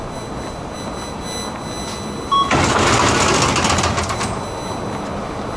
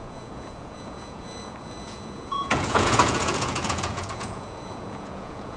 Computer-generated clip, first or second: second